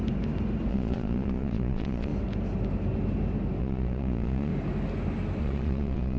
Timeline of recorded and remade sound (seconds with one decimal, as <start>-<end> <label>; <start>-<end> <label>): 0.0-0.7 recorded; 0.7-2.1 remade; 2.1-3.6 recorded; 3.6-4.5 remade; 4.5-5.4 recorded; 5.4-6.2 remade